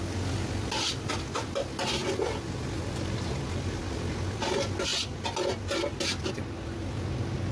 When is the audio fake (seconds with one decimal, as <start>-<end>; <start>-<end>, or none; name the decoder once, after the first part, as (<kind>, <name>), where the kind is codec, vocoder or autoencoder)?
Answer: none